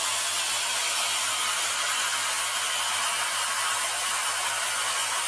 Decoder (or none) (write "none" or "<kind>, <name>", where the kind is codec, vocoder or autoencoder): none